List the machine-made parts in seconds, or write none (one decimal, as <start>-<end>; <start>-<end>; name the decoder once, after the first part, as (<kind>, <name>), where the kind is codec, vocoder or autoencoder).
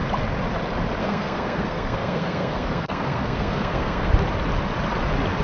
1.0-4.1 (codec, SNAC)